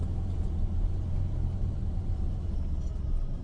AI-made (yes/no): yes